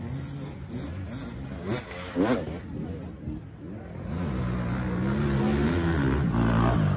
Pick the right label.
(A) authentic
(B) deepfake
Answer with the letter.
A